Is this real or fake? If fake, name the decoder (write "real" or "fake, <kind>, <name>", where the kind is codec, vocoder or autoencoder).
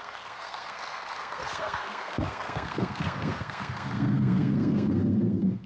fake, codec, SNAC